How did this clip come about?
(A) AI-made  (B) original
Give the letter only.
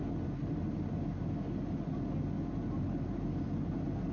B